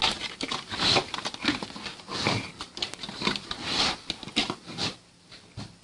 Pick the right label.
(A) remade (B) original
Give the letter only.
B